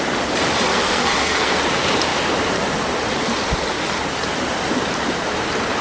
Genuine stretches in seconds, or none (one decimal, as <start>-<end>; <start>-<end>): 0.0-0.7; 1.6-5.8